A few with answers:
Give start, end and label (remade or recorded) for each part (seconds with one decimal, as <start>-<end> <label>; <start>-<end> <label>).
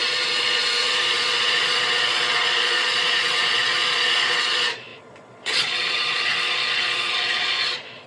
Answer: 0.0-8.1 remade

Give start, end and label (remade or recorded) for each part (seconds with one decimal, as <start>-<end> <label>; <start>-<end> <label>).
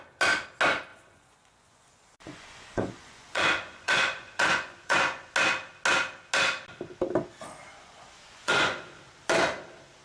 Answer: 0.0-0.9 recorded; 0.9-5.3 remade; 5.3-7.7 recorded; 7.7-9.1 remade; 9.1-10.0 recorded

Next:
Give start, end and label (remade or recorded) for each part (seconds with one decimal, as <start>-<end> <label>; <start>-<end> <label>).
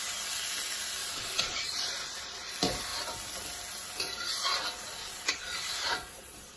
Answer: 0.0-1.0 recorded; 1.0-2.5 remade; 2.5-5.0 recorded; 5.0-6.6 remade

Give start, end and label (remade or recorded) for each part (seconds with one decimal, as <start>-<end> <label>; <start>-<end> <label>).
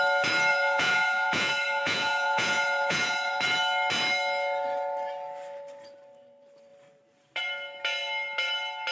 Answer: 0.0-0.5 recorded; 0.5-3.4 remade; 3.4-8.9 recorded